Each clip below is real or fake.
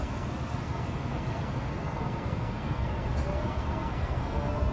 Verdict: fake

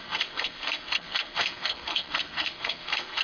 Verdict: fake